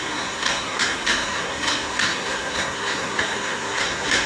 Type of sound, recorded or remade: remade